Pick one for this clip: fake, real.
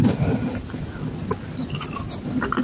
real